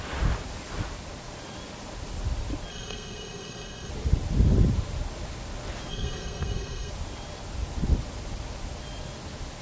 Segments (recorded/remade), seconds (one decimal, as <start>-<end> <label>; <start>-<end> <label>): 0.0-2.7 recorded; 2.7-3.9 remade; 3.9-5.9 recorded; 5.9-6.9 remade; 6.9-9.6 recorded